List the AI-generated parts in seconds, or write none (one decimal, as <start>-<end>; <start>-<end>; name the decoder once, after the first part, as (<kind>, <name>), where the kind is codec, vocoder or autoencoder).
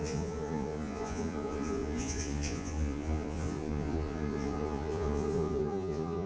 0.0-6.3 (vocoder, Vocos)